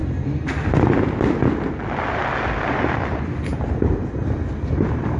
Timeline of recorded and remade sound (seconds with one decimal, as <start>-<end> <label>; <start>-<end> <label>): 0.0-5.2 recorded

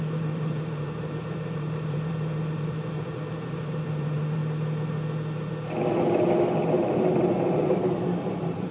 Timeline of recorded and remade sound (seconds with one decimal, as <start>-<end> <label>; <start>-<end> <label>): 0.0-4.4 remade; 4.4-6.7 recorded; 6.7-8.7 remade

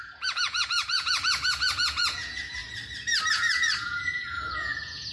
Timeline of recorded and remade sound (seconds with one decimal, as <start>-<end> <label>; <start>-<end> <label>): 0.0-2.6 remade; 2.6-3.3 recorded; 3.3-5.1 remade

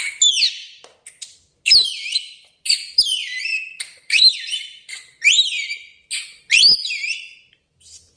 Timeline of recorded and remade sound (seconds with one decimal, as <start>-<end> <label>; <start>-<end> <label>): 0.0-8.2 recorded

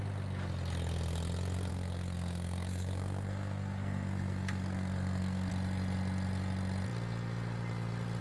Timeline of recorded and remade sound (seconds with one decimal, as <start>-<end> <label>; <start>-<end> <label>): 0.0-1.7 recorded; 1.7-5.5 remade; 5.5-8.2 recorded

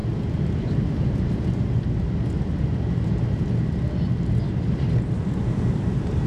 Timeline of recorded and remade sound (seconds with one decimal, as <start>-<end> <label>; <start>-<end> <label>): 0.0-6.3 recorded